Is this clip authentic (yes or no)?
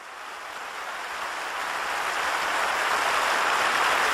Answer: yes